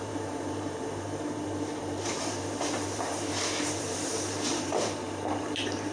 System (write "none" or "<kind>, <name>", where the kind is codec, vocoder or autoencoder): vocoder, BigVGAN v2